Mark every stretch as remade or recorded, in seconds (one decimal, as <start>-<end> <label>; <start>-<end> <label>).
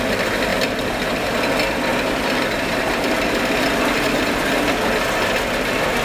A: 0.0-0.5 recorded; 0.5-1.5 remade; 1.5-1.9 recorded; 1.9-4.5 remade; 4.5-6.0 recorded